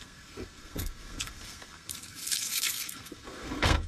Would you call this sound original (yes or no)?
no